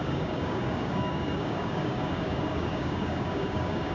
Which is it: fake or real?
fake